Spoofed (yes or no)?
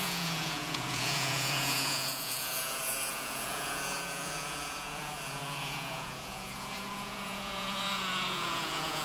yes